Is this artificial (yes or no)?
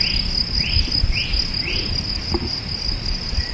no